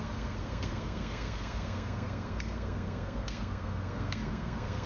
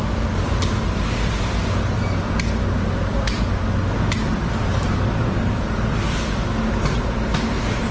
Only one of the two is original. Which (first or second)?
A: second